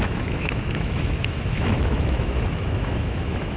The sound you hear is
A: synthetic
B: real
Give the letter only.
A